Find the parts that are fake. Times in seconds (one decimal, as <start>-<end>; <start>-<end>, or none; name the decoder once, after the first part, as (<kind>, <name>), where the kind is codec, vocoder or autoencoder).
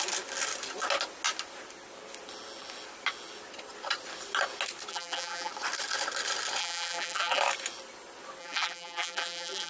4.9-5.5 (vocoder, BigVGAN v2); 6.6-7.4; 8.4-9.7